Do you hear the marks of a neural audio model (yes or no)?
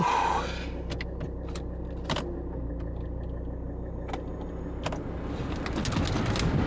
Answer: no